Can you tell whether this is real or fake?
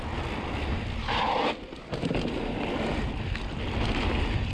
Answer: real